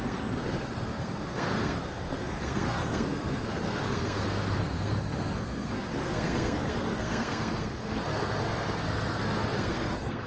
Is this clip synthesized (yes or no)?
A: yes